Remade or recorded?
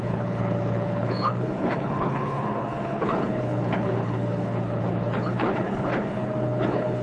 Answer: remade